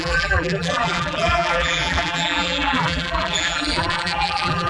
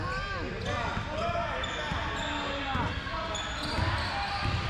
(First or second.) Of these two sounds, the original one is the second